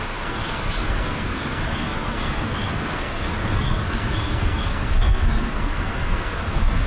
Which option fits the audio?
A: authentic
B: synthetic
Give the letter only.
B